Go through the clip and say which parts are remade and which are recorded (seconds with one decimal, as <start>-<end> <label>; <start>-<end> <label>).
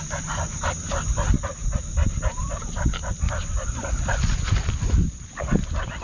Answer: 0.0-2.4 recorded; 2.4-4.5 remade; 4.5-6.0 recorded